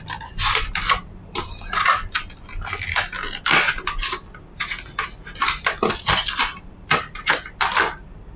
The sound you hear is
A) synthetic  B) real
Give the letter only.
B